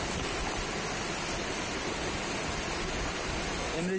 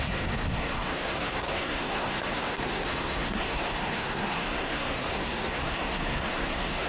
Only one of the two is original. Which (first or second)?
first